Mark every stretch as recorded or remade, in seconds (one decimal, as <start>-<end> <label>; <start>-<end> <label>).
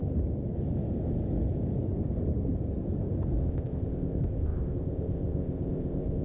0.0-3.4 recorded; 3.4-6.2 remade